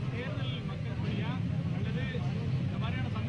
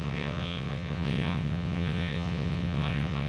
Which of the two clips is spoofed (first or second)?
second